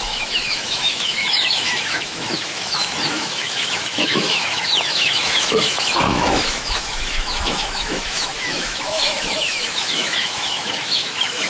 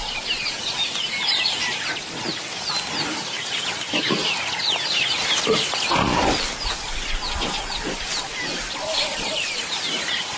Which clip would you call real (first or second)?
second